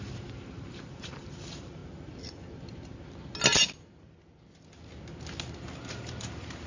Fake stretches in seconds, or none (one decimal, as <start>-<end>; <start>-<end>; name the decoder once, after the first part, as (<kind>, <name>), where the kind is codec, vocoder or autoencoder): 0.0-1.8 (vocoder, BigVGAN v2); 5.8-6.7